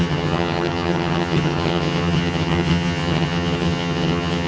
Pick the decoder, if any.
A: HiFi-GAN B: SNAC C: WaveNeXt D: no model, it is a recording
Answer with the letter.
A